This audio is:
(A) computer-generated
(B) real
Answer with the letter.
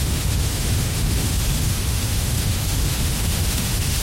A